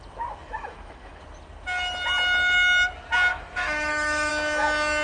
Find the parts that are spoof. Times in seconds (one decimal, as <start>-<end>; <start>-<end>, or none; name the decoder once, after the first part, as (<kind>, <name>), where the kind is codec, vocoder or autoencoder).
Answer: 0.4-1.2 (autoencoder, DAC-VAE); 3.3-4.3